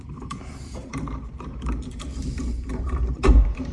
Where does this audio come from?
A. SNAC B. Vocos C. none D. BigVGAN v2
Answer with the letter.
D